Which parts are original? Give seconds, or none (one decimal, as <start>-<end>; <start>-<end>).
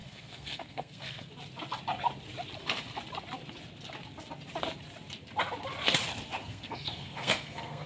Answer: 1.3-6.4